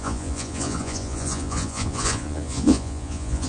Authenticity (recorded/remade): remade